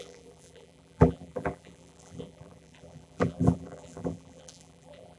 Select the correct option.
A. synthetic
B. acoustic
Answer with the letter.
A